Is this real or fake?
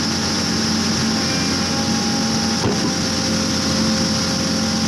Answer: real